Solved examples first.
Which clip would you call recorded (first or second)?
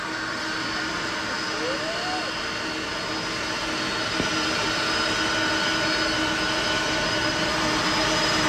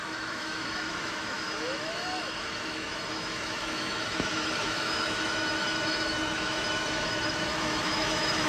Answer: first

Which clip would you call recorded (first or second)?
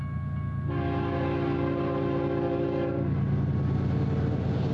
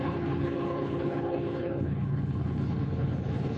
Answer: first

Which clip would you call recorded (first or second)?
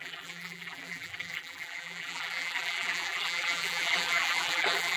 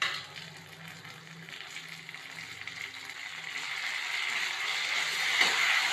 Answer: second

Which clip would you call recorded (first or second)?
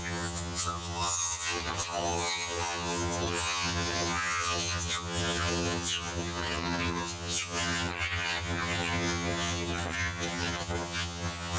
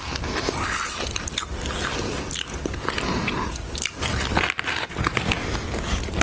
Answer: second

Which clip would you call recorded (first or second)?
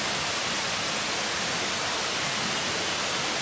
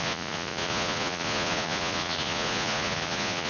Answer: first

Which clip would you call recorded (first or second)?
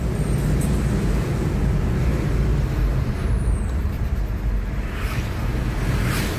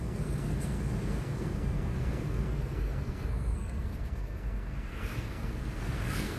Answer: first